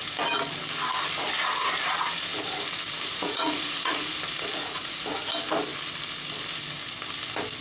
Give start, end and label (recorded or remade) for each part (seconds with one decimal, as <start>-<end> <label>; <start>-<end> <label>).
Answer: 0.0-3.2 recorded; 3.2-4.1 remade; 4.1-4.6 recorded; 4.6-5.2 remade; 5.2-7.6 recorded

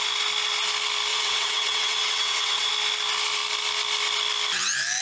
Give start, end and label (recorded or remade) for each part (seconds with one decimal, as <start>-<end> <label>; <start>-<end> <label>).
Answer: 0.0-1.1 recorded; 1.1-2.7 remade; 2.7-5.0 recorded

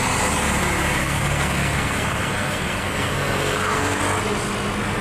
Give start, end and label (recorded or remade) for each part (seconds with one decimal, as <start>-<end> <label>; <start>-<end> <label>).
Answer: 0.0-1.0 recorded; 1.0-4.0 remade; 4.0-5.0 recorded

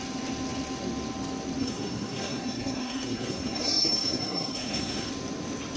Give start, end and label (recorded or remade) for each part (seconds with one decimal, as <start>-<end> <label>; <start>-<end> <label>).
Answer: 0.0-1.6 recorded; 1.6-5.1 remade; 5.1-5.8 recorded

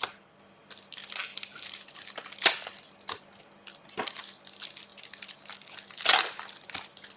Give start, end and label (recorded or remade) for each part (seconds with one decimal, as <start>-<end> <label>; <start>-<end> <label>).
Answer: 0.0-7.2 recorded

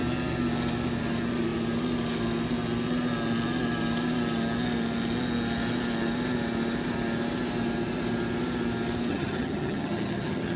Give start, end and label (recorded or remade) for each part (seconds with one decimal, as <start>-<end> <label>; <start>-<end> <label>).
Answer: 0.0-9.1 recorded; 9.1-10.6 remade